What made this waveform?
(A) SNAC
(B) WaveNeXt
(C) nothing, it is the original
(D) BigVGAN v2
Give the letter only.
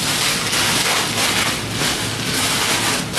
C